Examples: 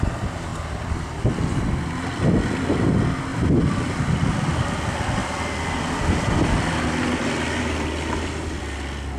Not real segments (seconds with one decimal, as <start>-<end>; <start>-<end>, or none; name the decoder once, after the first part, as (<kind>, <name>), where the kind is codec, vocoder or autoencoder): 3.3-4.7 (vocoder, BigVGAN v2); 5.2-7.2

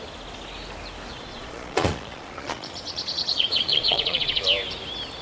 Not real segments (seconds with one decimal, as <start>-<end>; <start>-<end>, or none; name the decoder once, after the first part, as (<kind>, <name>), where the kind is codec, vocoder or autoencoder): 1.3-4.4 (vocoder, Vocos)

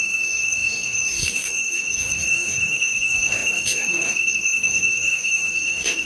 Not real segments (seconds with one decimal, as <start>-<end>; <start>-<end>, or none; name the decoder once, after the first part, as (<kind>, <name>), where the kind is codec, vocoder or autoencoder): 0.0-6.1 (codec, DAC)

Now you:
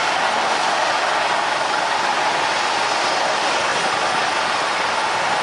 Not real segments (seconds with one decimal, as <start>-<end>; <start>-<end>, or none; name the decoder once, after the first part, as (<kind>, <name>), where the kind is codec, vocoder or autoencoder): none

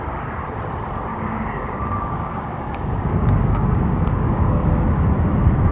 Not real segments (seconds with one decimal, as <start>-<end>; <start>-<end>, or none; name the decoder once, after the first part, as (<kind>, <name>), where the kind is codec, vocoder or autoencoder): 1.1-4.5 (codec, DAC)